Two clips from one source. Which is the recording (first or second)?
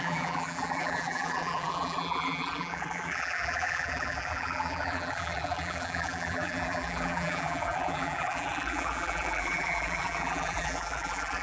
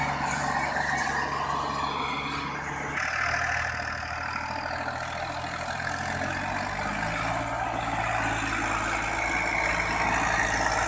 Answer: second